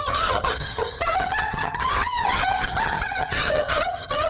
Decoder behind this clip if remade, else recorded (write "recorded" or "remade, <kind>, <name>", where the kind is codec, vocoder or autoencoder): remade, vocoder, HiFi-GAN